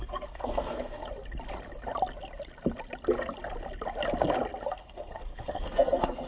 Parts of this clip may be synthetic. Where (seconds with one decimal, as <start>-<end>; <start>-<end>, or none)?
0.0-1.0; 4.8-6.3